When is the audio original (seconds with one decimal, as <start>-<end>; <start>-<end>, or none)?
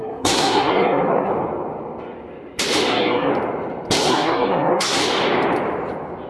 1.3-2.9; 3.3-4.1; 5.0-6.3